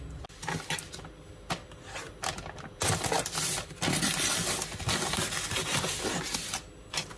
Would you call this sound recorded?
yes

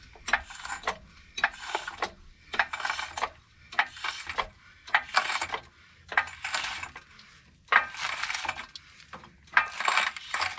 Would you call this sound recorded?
yes